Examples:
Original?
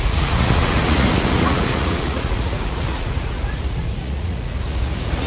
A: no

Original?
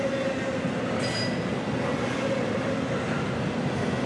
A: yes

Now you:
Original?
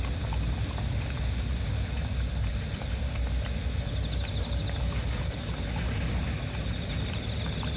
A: yes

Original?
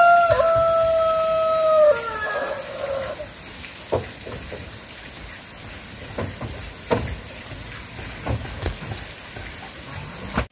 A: yes